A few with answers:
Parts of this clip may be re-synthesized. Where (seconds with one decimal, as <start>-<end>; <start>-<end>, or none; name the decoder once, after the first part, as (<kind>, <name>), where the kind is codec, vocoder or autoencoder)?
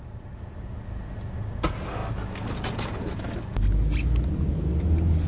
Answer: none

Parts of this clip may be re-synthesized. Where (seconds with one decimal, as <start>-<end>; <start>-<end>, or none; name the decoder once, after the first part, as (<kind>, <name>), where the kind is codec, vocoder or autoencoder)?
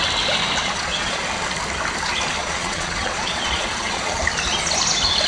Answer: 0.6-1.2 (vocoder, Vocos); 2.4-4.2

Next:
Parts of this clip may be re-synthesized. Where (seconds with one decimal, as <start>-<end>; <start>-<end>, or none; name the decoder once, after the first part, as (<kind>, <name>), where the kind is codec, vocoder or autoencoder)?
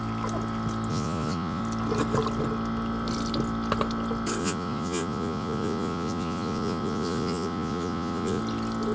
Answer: 0.9-1.6 (vocoder, Vocos); 4.4-8.4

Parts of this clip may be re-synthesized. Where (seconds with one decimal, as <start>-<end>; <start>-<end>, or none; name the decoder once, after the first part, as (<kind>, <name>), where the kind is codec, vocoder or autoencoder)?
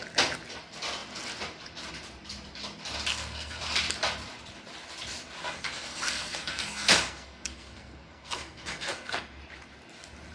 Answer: 3.1-3.6 (codec, SNAC); 5.4-9.4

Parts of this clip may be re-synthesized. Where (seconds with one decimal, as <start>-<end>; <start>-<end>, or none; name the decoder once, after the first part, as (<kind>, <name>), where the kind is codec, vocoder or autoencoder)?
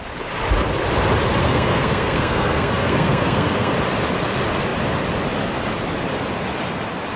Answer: 1.4-3.7 (codec, SNAC)